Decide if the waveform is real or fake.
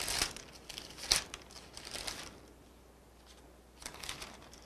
real